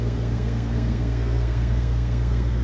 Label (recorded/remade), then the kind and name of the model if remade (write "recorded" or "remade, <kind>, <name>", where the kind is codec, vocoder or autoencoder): remade, codec, SNAC